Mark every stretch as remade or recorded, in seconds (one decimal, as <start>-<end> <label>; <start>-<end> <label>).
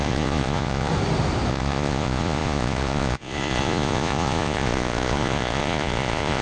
0.0-0.9 remade; 0.9-1.5 recorded; 1.5-6.4 remade